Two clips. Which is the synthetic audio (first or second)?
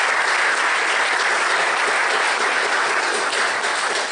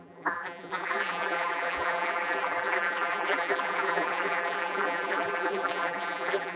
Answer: second